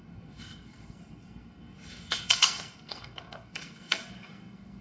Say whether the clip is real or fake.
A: fake